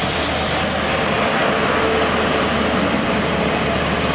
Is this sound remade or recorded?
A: recorded